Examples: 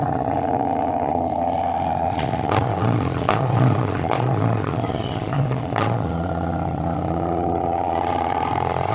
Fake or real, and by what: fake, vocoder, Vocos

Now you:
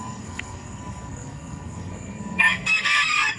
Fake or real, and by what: fake, codec, SNAC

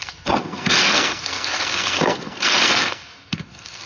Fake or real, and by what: fake, codec, SNAC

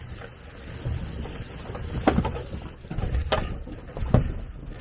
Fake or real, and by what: real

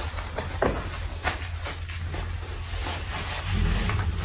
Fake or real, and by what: real